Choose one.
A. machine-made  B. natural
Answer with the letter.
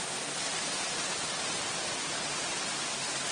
B